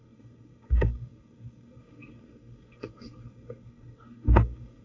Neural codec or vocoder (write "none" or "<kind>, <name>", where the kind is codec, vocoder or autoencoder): codec, SNAC